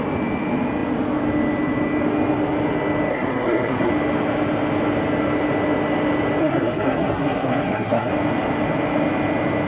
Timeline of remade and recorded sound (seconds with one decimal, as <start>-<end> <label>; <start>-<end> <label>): 0.0-3.1 recorded; 3.1-3.9 remade; 3.9-6.4 recorded; 6.4-8.1 remade; 8.1-9.7 recorded